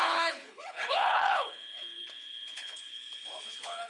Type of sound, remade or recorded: remade